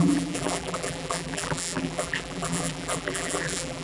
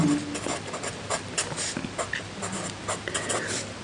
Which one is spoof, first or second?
first